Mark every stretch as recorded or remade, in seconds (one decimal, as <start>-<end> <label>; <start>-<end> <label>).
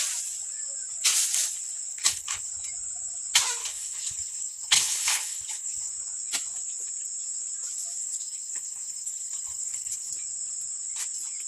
0.0-1.9 recorded; 1.9-2.5 remade; 2.5-3.6 recorded; 3.6-5.9 remade; 5.9-8.0 recorded; 8.0-10.1 remade; 10.1-11.5 recorded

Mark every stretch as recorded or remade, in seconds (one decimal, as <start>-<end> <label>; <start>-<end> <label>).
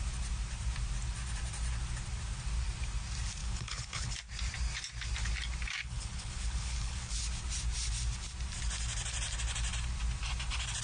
0.0-3.4 recorded; 3.4-4.1 remade; 4.1-5.8 recorded; 5.8-7.2 remade; 7.2-10.8 recorded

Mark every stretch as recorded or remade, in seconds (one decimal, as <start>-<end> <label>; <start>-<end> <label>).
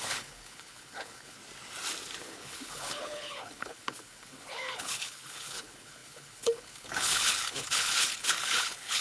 0.0-1.4 remade; 1.4-2.2 recorded; 2.2-9.0 remade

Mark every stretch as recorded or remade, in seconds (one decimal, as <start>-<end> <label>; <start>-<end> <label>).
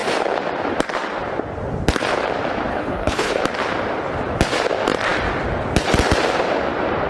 0.0-2.7 recorded; 2.7-3.4 remade; 3.4-7.1 recorded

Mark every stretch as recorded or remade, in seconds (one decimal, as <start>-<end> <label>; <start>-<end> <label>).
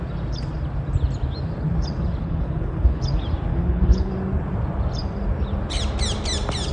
0.0-2.2 recorded; 2.2-3.0 remade; 3.0-3.5 recorded; 3.5-4.1 remade; 4.1-6.7 recorded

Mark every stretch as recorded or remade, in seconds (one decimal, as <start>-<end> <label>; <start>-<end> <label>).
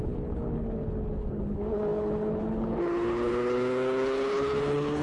0.0-5.0 remade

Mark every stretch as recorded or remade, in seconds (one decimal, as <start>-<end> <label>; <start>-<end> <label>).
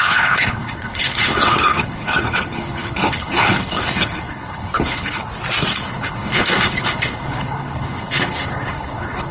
0.0-5.2 remade; 5.2-5.7 recorded; 5.7-9.3 remade